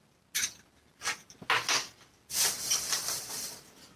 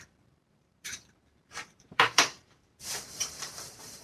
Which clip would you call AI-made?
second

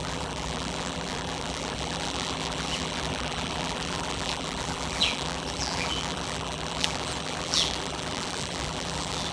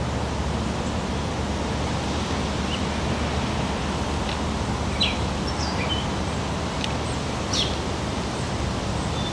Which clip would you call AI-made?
first